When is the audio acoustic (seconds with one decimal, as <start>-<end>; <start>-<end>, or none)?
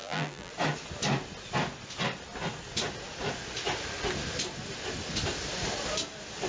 0.5-6.5